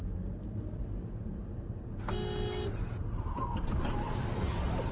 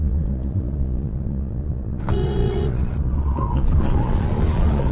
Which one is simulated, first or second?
second